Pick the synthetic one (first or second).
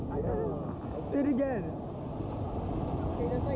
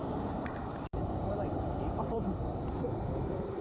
second